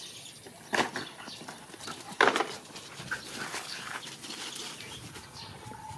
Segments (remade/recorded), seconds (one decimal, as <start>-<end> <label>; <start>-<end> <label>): 0.0-3.5 recorded; 3.5-4.0 remade; 4.0-6.0 recorded